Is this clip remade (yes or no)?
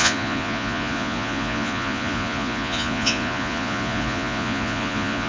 yes